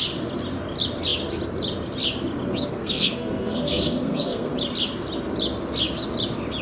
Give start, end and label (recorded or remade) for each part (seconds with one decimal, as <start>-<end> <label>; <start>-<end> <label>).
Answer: 0.0-2.7 recorded; 2.7-4.5 remade; 4.5-6.6 recorded